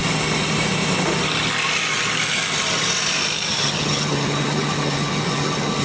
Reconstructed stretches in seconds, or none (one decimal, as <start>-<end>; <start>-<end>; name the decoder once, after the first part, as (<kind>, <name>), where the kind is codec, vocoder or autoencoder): 3.5-5.8 (vocoder, HiFi-GAN)

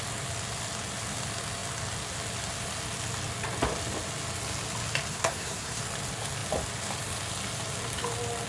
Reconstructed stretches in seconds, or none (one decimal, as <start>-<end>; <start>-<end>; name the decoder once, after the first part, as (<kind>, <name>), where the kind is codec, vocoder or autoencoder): 5.1-5.8 (codec, SNAC)

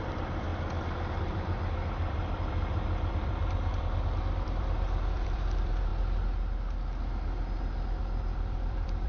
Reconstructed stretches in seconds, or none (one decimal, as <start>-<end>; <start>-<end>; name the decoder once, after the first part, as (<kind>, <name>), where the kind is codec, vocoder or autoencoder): 0.0-0.5 (vocoder, BigVGAN v2); 1.2-5.9; 8.0-9.1

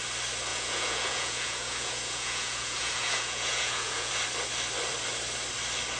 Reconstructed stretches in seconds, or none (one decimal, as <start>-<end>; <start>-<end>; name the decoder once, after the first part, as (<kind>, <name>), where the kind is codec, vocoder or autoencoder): 0.5-4.1 (vocoder, Vocos)

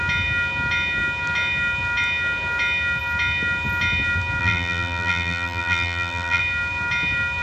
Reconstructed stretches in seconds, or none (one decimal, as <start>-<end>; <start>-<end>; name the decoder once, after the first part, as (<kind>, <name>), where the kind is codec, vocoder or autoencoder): 4.4-6.4 (vocoder, BigVGAN v2)

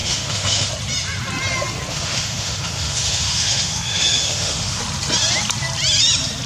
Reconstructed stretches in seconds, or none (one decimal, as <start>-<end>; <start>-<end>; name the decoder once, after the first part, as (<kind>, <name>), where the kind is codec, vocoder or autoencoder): 0.0-0.7 (autoencoder, DAC-VAE); 1.9-4.8

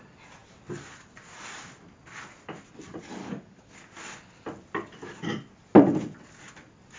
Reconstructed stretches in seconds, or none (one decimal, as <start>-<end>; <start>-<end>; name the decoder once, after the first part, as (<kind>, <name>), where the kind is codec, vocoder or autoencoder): 3.2-3.7 (codec, DAC)

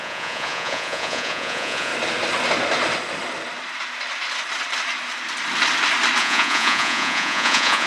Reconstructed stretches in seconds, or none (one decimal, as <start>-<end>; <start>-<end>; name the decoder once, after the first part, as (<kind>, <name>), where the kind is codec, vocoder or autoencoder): 0.0-1.9 (vocoder, Vocos); 6.2-7.9